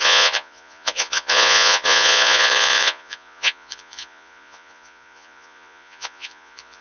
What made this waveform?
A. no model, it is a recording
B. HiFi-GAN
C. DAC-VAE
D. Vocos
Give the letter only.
D